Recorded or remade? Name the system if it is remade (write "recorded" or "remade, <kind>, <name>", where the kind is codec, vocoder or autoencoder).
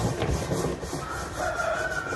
remade, vocoder, BigVGAN v2